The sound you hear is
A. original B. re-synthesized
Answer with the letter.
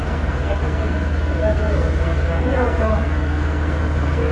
B